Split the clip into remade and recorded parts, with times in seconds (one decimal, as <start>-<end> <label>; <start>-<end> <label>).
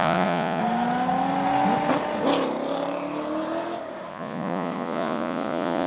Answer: 0.0-0.6 remade; 0.6-4.1 recorded; 4.1-5.9 remade